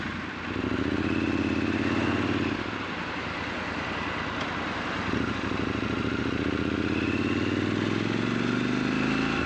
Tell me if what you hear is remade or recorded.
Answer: recorded